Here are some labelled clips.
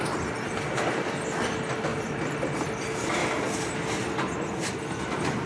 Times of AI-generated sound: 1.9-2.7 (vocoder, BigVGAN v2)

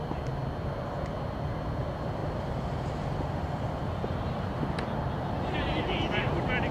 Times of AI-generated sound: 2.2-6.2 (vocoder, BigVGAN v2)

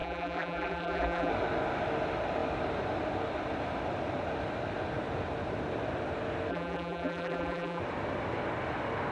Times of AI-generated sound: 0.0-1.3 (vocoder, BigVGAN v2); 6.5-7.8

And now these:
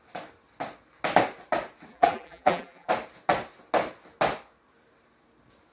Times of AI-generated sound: 1.9-2.9 (vocoder, BigVGAN v2)

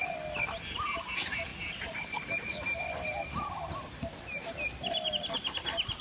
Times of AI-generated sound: 1.5-5.1 (vocoder, BigVGAN v2)